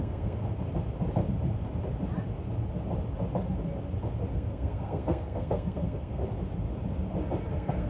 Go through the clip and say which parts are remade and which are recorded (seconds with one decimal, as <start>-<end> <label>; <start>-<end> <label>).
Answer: 0.0-0.4 remade; 0.4-4.3 recorded; 4.3-6.2 remade; 6.2-7.5 recorded; 7.5-7.9 remade